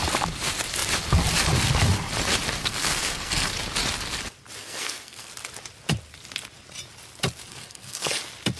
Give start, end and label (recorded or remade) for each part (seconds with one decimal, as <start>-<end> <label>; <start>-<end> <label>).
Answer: 0.0-2.6 recorded; 2.6-3.5 remade; 3.5-4.6 recorded; 4.6-5.3 remade; 5.3-7.5 recorded; 7.5-8.2 remade; 8.2-8.6 recorded

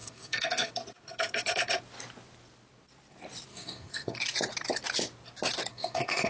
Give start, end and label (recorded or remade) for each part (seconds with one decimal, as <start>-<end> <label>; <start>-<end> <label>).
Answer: 0.0-0.7 remade; 0.7-3.5 recorded; 3.5-4.2 remade; 4.2-5.7 recorded; 5.7-6.3 remade

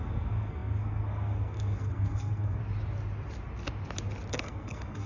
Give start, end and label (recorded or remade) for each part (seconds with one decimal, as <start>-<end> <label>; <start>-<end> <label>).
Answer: 0.0-2.6 remade; 2.6-4.3 recorded; 4.3-5.1 remade

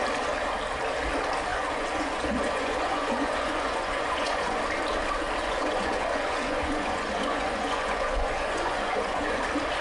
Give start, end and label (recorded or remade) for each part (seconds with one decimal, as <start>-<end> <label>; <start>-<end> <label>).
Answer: 0.0-1.5 recorded; 1.5-4.6 remade; 4.6-5.4 recorded; 5.4-9.4 remade; 9.4-9.8 recorded

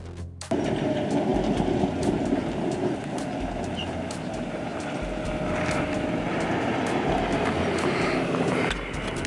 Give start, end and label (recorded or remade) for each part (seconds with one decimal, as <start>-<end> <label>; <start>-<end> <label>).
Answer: 0.0-9.3 recorded

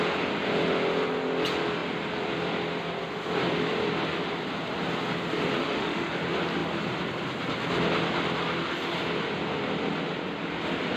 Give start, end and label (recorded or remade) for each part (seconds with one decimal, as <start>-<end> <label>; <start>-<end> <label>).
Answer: 0.0-5.6 recorded; 5.6-6.1 remade; 6.1-11.0 recorded